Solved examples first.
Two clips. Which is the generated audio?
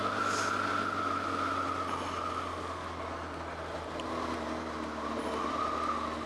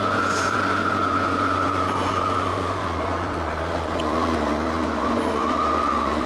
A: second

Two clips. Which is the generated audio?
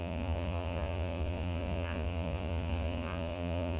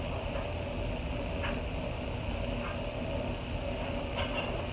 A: first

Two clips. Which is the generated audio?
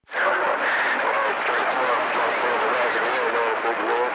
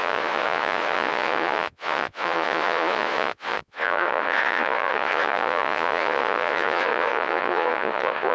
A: second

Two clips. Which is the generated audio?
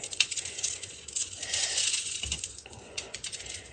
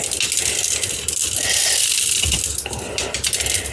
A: first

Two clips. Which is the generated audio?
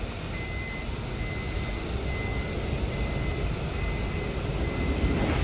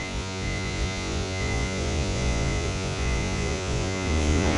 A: second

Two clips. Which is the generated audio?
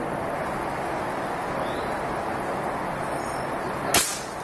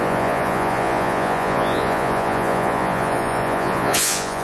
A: second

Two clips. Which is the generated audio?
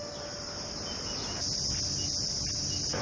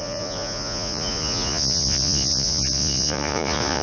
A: second